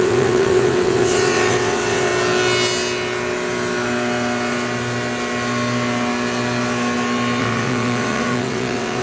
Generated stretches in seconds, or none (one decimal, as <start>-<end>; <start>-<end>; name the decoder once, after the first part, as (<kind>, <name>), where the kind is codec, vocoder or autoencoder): 0.0-2.1 (vocoder, WaveNeXt); 7.4-9.0